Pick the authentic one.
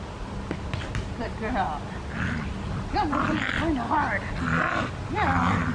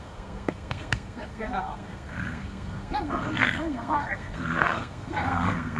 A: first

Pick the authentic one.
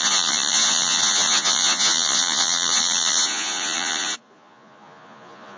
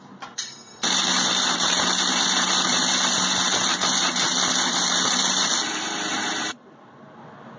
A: second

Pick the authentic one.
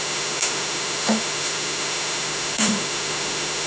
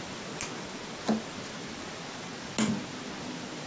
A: second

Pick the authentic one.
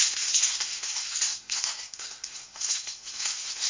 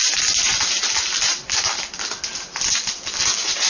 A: second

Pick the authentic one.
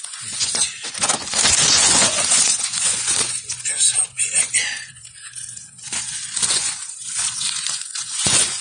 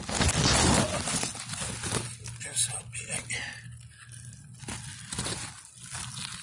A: second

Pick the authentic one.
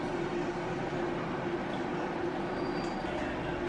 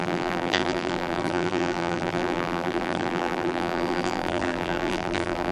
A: first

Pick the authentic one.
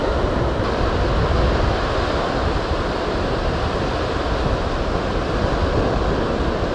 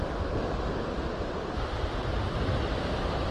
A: first